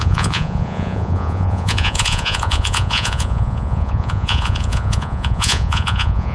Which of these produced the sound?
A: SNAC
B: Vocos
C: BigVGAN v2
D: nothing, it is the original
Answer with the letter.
B